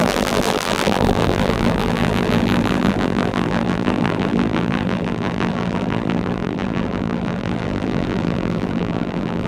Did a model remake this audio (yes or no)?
yes